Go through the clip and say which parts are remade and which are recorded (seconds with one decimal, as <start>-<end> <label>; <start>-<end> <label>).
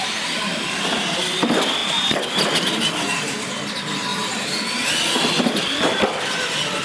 0.0-6.8 recorded